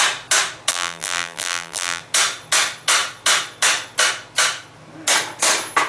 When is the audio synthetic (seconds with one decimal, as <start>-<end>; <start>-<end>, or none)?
0.7-2.0